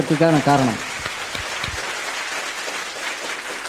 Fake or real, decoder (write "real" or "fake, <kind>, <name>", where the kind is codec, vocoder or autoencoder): real